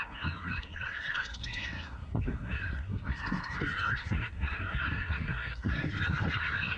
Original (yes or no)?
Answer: no